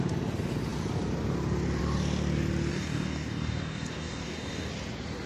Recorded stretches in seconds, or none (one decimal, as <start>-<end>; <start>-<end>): 0.0-2.7; 4.7-5.3